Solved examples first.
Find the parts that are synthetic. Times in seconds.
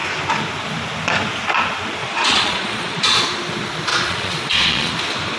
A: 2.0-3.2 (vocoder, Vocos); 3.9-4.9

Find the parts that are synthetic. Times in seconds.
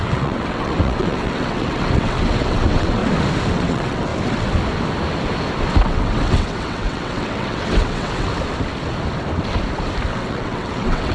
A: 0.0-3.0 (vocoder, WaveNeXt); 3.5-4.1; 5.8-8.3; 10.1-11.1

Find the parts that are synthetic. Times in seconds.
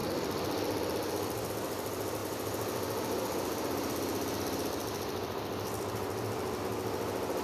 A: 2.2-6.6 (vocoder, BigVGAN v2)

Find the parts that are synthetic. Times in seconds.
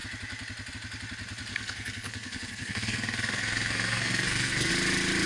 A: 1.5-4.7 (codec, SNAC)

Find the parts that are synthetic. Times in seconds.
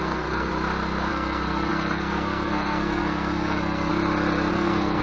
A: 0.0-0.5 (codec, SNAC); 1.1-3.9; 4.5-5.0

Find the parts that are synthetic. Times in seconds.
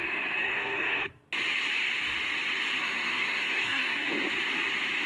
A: 0.4-1.1 (codec, SNAC); 2.8-4.1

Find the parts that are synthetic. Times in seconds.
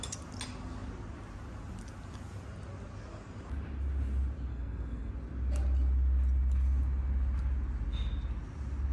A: 4.5-5.1 (codec, SNAC)